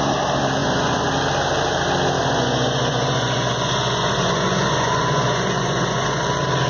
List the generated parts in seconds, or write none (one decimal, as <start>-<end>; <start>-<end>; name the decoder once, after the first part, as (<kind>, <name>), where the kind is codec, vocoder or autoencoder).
0.6-1.1 (vocoder, Vocos); 2.2-6.2